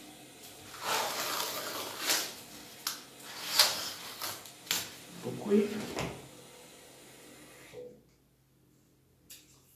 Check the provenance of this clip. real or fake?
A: real